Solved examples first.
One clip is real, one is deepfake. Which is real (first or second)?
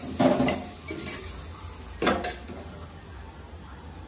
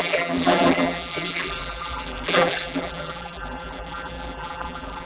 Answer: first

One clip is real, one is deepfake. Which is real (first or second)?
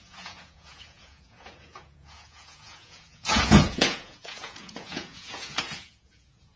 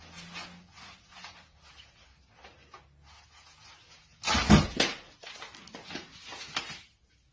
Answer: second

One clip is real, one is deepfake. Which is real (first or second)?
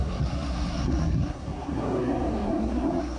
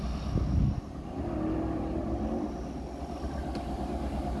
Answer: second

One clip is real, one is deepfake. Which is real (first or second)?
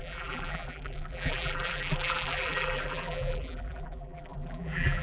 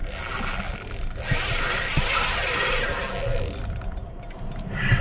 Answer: second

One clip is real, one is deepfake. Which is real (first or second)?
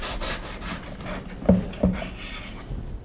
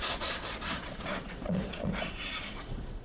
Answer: first